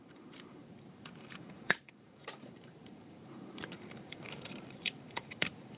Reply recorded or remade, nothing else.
remade